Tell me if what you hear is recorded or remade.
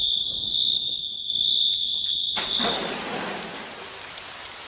recorded